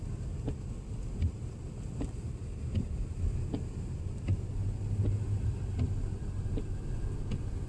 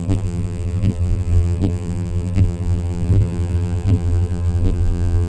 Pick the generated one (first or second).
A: second